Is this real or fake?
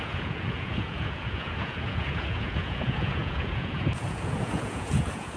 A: fake